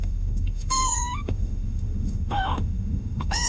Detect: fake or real fake